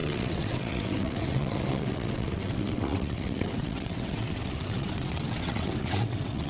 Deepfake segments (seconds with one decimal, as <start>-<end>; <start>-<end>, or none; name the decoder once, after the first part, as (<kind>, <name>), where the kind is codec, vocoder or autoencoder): 0.0-6.5 (vocoder, WaveNeXt)